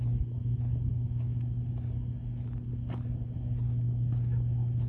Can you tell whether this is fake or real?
real